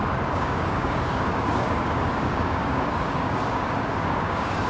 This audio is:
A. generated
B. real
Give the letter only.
A